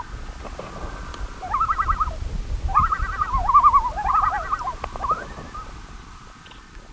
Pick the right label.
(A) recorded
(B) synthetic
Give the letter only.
A